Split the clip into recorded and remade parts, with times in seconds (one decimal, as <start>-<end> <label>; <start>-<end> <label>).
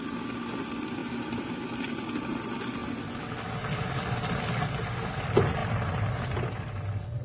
0.0-1.0 recorded; 1.0-1.6 remade; 1.6-5.6 recorded; 5.6-6.7 remade; 6.7-7.2 recorded